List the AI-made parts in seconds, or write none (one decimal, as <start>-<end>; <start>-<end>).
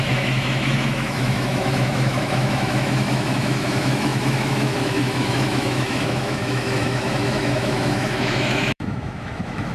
0.0-9.7